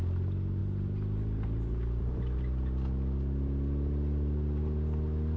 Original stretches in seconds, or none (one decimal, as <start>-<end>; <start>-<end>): 0.0-5.4